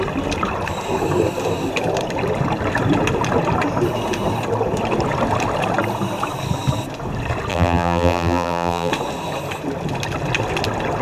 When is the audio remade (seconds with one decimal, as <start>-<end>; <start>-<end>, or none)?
7.5-8.9